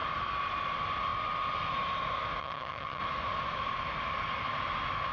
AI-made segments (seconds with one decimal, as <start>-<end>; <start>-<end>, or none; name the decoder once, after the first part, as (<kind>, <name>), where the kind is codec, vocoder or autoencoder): 2.4-3.0 (vocoder, HiFi-GAN)